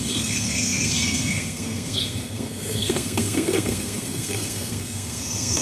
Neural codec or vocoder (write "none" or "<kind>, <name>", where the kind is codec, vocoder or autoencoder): codec, SNAC